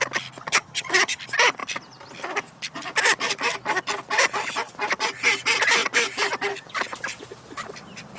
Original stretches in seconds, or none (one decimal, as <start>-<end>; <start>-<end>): 0.0-0.4; 1.2-8.2